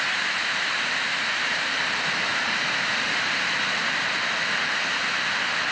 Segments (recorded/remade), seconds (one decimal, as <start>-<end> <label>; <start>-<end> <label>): 0.0-0.4 recorded; 0.4-1.7 remade; 1.7-2.3 recorded; 2.3-3.6 remade; 3.6-5.7 recorded